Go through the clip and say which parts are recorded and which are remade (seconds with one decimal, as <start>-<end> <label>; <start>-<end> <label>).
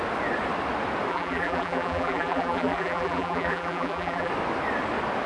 0.0-1.1 recorded; 1.1-4.3 remade; 4.3-5.3 recorded